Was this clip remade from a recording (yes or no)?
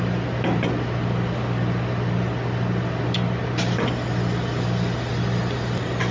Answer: no